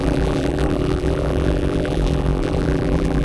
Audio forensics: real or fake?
fake